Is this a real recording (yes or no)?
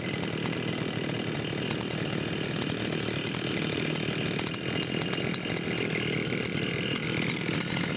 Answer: yes